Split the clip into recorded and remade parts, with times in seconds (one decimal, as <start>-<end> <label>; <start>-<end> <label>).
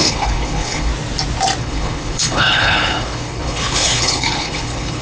0.0-0.9 remade; 0.9-1.6 recorded; 1.6-5.0 remade